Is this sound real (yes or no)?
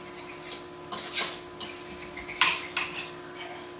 yes